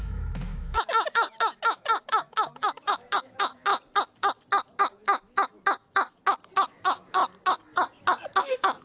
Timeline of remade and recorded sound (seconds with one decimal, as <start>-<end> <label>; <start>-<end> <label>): 0.0-3.7 remade; 3.7-4.8 recorded; 4.8-6.2 remade; 6.2-6.8 recorded; 6.8-7.2 remade; 7.2-8.4 recorded; 8.4-8.8 remade